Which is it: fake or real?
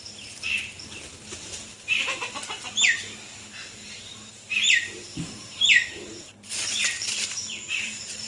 fake